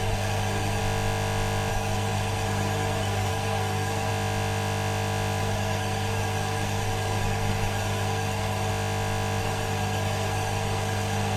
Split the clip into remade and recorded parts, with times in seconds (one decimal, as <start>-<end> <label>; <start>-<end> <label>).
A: 0.0-0.8 remade; 0.8-1.7 recorded; 1.7-4.1 remade; 4.1-5.4 recorded; 5.4-8.7 remade; 8.7-9.4 recorded; 9.4-11.4 remade